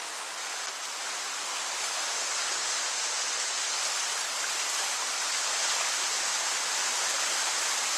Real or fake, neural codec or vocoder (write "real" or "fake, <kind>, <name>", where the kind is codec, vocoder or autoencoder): real